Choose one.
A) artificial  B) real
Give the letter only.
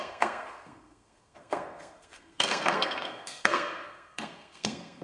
A